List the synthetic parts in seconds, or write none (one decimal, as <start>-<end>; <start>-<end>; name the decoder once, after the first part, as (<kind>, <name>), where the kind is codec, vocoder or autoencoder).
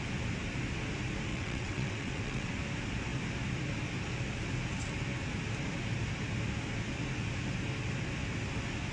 1.3-2.5 (vocoder, WaveNeXt)